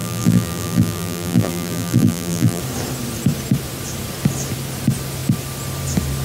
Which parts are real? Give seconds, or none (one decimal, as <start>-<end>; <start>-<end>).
2.6-6.2